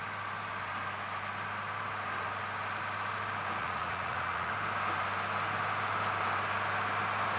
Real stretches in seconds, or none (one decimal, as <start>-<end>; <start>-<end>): 0.0-3.6; 4.5-7.4